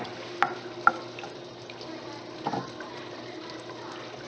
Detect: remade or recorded recorded